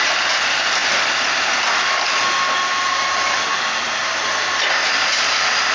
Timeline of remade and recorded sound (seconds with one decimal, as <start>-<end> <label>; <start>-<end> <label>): 0.0-5.7 recorded